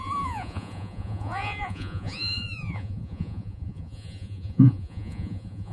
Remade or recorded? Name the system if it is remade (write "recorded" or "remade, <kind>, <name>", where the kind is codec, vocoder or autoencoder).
remade, vocoder, Vocos